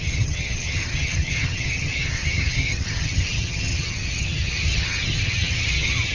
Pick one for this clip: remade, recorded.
remade